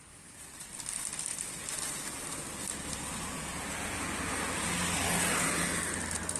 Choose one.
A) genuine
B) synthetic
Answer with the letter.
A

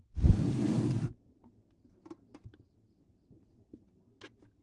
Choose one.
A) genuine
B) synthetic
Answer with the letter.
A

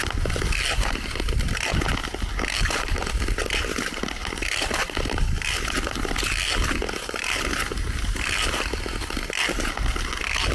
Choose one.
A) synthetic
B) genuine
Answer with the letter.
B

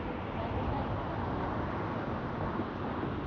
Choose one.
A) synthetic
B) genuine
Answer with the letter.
B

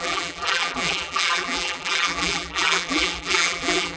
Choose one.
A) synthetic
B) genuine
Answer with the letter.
A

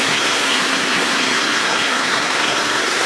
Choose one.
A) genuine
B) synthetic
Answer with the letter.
B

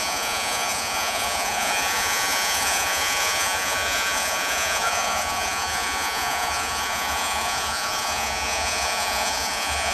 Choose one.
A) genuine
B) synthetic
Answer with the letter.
B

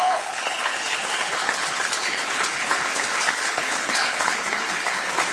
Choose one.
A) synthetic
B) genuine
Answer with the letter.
A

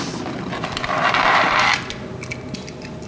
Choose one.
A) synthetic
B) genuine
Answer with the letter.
B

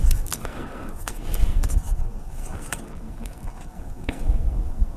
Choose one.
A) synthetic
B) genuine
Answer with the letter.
A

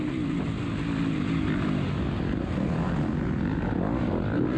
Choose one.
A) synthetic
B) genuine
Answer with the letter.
B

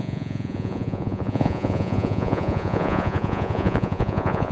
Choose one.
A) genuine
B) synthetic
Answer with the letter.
B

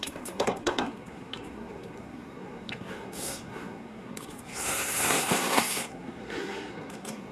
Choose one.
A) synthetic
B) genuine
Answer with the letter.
A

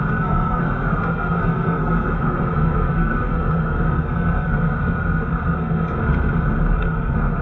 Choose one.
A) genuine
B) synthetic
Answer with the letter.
B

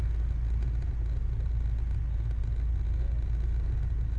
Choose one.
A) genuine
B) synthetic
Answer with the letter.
A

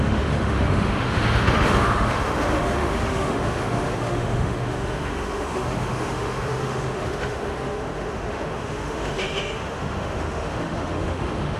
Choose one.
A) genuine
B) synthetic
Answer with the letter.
B